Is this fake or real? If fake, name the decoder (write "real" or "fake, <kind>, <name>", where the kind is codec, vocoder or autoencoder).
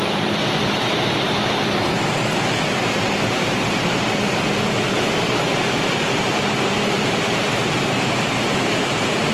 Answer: fake, vocoder, BigVGAN v2